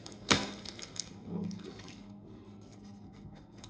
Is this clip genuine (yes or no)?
no